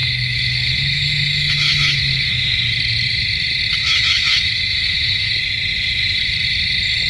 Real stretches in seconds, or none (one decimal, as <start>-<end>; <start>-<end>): 2.6-3.8; 5.3-7.1